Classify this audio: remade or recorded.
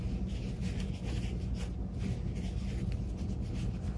recorded